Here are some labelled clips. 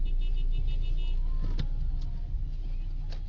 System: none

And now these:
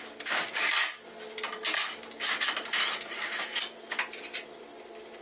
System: none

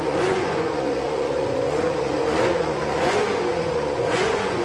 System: vocoder, Vocos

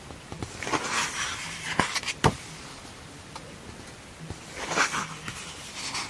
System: none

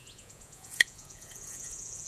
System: vocoder, Vocos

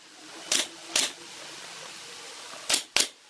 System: none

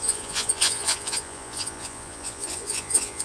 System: vocoder, Vocos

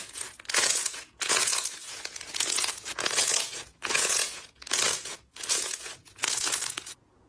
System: vocoder, Vocos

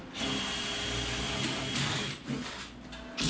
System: none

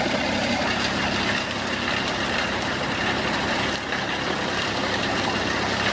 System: none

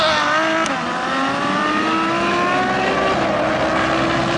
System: none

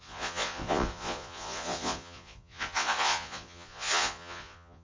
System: vocoder, Vocos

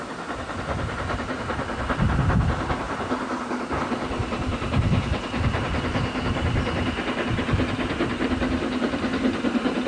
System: none